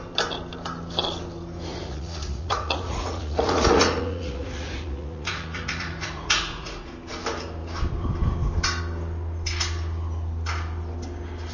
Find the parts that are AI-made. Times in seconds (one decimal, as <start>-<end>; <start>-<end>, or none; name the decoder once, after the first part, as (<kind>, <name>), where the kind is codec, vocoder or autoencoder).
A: 1.7-6.9 (vocoder, Vocos)